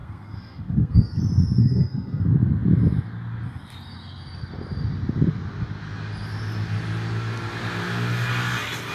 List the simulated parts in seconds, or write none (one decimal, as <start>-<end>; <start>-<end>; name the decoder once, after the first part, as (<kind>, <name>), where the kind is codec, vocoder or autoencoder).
0.0-1.2 (codec, SNAC); 1.6-2.2